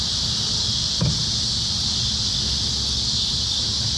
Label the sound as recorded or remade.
recorded